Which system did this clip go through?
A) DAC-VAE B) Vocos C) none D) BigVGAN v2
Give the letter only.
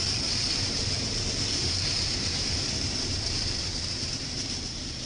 D